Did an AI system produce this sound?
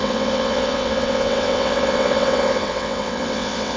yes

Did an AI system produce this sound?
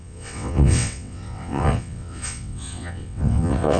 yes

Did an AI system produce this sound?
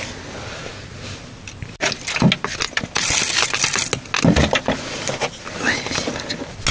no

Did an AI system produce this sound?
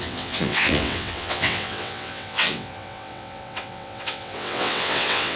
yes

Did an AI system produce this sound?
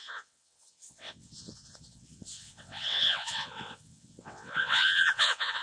yes